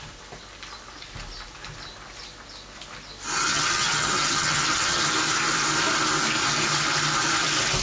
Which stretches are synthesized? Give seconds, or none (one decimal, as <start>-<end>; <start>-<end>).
3.4-5.0